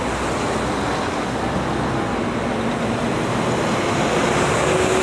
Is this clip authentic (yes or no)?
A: yes